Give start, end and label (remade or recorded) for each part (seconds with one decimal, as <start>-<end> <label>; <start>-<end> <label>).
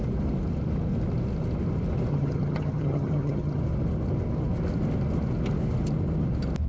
0.0-2.1 recorded; 2.1-3.6 remade; 3.6-6.7 recorded